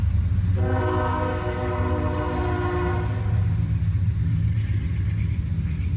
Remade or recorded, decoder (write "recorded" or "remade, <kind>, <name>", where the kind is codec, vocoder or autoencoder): recorded